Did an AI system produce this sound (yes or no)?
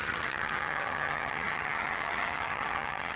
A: yes